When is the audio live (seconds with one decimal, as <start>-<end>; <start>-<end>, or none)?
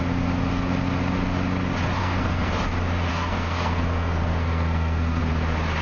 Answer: 0.0-2.0; 2.5-3.1; 5.2-5.8